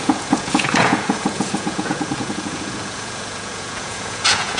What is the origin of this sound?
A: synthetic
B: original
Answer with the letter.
A